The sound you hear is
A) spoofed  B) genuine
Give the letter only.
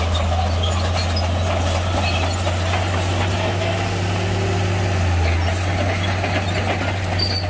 B